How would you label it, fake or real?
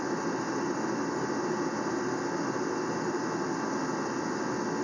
real